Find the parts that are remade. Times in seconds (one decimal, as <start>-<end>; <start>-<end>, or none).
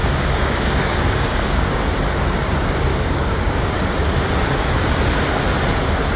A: 0.0-1.8; 2.9-3.7